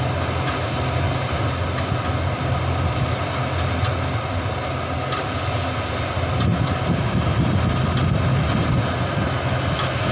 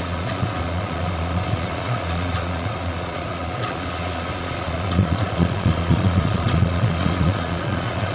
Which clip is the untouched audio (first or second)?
first